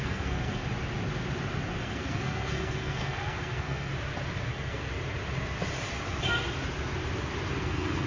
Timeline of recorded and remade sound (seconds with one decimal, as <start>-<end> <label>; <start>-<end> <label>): 0.0-0.6 remade; 0.6-1.8 recorded; 1.8-3.9 remade; 3.9-4.5 recorded; 4.5-4.9 remade; 4.9-7.6 recorded; 7.6-8.1 remade